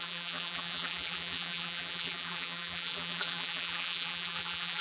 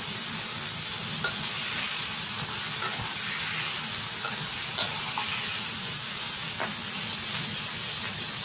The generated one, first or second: first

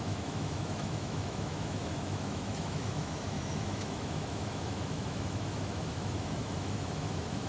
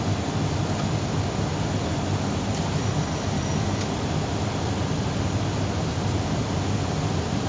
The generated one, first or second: first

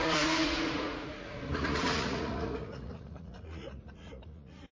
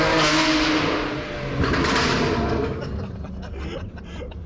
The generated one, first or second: first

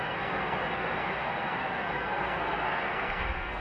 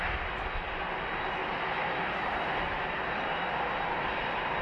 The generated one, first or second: first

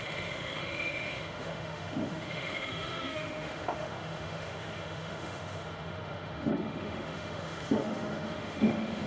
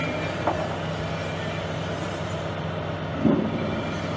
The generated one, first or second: first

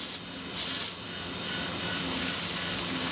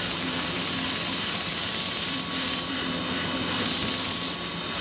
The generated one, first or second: second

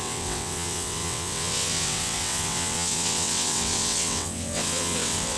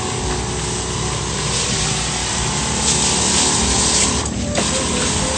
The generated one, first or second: first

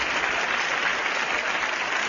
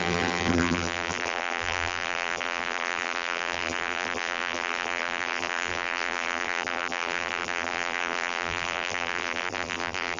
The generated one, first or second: second